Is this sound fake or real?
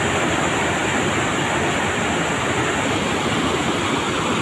real